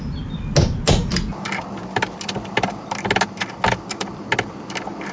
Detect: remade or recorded recorded